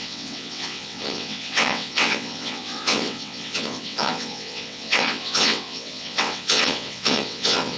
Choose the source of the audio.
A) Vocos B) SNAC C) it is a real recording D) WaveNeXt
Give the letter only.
D